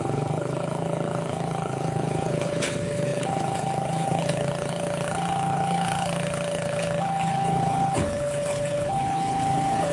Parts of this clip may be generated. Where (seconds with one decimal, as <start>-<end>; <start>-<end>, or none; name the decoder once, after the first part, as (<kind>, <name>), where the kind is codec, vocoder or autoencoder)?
0.0-9.9 (codec, HILCodec)

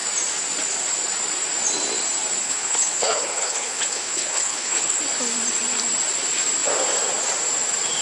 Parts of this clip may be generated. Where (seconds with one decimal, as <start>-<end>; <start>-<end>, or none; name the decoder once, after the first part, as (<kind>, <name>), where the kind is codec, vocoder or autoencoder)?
2.4-5.0 (codec, HILCodec)

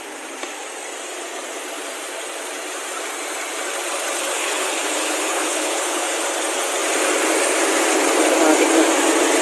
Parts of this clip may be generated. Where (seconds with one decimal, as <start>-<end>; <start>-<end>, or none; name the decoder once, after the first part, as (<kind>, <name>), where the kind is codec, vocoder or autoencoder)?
4.3-6.2 (codec, HILCodec)

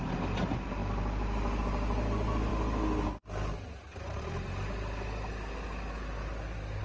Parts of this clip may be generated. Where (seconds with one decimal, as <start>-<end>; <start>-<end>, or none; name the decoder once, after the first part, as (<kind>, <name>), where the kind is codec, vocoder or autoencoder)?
none

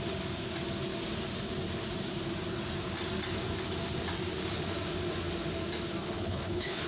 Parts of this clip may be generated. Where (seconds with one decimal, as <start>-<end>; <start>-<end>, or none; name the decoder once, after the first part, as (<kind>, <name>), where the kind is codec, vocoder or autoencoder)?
6.0-6.9 (codec, HILCodec)

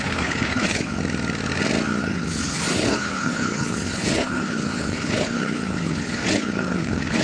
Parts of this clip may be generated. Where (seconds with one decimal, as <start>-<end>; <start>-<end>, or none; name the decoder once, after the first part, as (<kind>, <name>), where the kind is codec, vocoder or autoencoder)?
0.0-1.0 (codec, HILCodec); 2.0-7.2